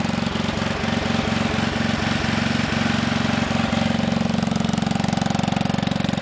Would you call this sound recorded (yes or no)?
yes